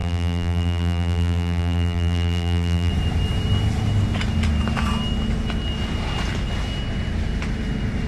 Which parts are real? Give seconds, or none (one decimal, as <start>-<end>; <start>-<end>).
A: 2.9-8.1